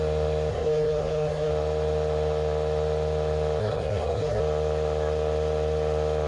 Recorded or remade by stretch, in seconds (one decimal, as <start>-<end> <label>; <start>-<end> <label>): 0.0-0.5 recorded; 0.5-1.5 remade; 1.5-3.6 recorded; 3.6-4.4 remade; 4.4-6.3 recorded